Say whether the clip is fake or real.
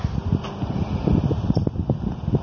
real